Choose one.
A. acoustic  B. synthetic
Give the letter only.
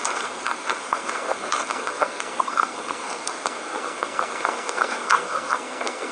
B